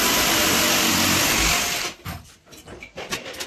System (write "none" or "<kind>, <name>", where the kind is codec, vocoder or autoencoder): none